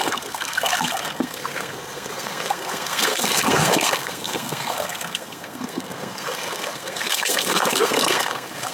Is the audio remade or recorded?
remade